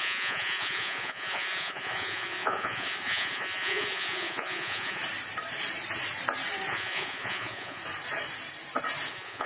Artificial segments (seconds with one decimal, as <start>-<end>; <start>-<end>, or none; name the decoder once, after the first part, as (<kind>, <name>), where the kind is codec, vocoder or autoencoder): 0.0-5.0 (vocoder, Vocos); 6.7-7.8; 9.1-9.5